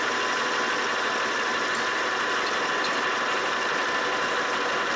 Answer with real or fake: real